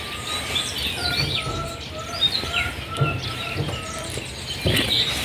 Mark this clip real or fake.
real